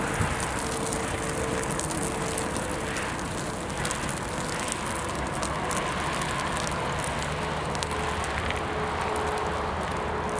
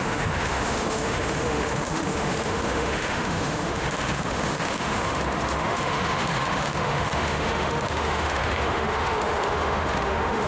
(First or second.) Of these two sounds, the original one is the first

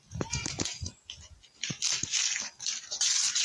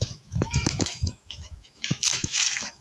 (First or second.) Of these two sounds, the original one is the first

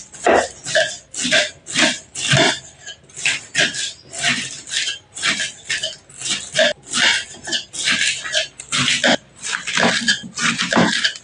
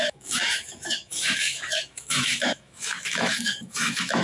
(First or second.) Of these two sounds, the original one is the first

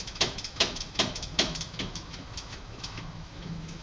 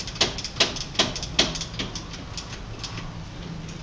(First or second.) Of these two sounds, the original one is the second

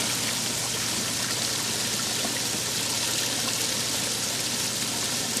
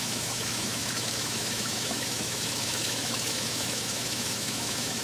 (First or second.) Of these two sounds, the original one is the first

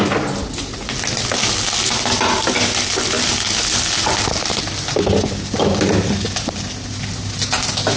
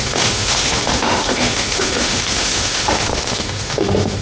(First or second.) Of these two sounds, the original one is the first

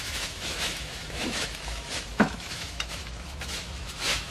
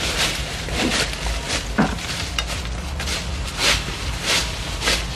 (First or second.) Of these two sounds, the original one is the second